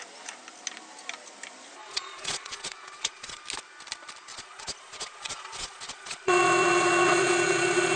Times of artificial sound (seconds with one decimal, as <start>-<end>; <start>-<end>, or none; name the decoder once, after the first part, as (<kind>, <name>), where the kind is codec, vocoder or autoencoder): 1.8-3.4 (vocoder, Vocos); 4.3-8.0